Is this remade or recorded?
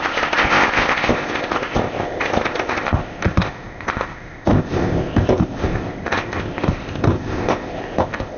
remade